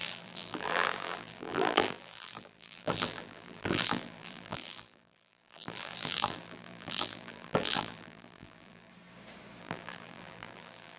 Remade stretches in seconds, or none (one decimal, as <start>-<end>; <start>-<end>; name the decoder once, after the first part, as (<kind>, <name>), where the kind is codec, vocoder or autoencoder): 0.0-8.9 (vocoder, BigVGAN v2); 9.6-11.0